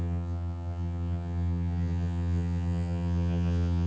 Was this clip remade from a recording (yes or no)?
yes